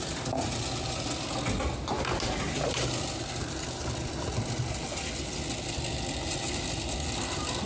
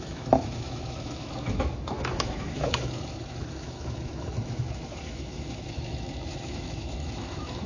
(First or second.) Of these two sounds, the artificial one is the second